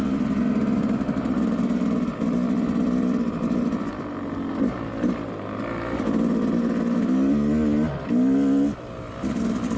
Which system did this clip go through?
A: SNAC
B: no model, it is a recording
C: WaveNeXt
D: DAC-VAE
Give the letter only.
B